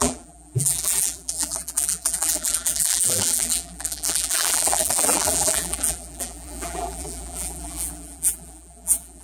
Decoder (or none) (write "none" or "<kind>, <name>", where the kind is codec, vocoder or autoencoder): vocoder, BigVGAN v2